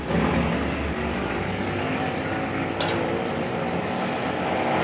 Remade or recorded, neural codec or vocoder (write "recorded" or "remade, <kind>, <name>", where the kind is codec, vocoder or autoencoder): recorded